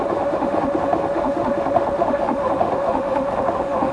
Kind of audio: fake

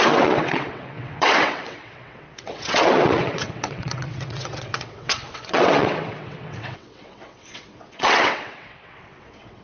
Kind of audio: fake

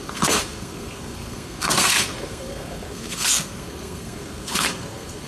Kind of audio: fake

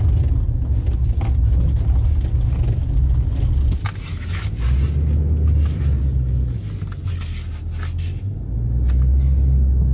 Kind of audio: real